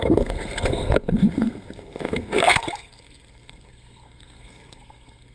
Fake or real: fake